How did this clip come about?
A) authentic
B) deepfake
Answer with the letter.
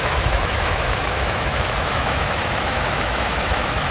B